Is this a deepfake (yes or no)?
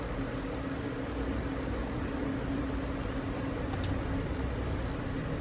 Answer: no